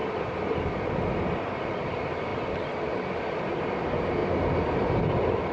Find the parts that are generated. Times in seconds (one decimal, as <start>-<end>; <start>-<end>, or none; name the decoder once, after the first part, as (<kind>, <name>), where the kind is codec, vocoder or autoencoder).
0.0-1.6 (vocoder, BigVGAN v2); 4.2-5.0